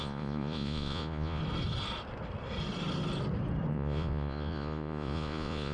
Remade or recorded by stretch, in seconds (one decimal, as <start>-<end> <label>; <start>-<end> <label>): 0.0-1.4 remade; 1.4-3.7 recorded; 3.7-5.7 remade